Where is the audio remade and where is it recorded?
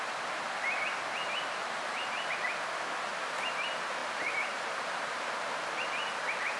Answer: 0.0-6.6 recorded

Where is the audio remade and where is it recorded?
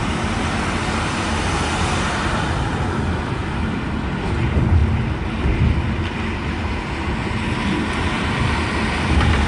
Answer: 0.0-9.5 recorded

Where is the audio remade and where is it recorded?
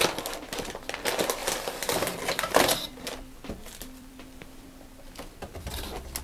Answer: 0.0-1.4 recorded; 1.4-4.2 remade; 4.2-6.2 recorded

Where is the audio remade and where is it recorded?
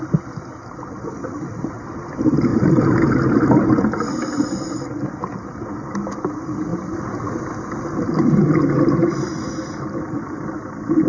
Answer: 0.0-2.5 recorded; 2.5-3.1 remade; 3.1-11.1 recorded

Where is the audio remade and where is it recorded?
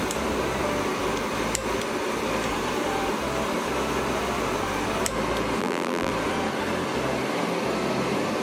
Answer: 0.0-5.6 recorded; 5.6-6.1 remade; 6.1-8.4 recorded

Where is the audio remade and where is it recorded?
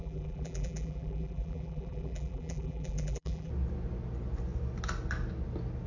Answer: 0.0-3.5 remade; 3.5-5.9 recorded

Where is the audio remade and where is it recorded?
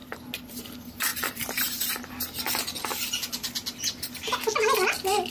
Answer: 0.0-1.1 recorded; 1.1-1.8 remade; 1.8-5.3 recorded